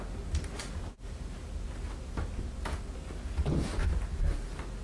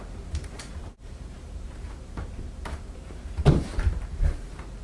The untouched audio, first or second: first